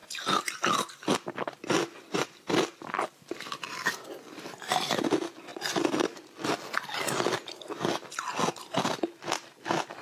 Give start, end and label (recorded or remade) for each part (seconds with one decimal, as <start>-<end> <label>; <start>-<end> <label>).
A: 0.0-10.0 recorded